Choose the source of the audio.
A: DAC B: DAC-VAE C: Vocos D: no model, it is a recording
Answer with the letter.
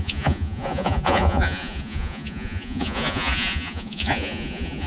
C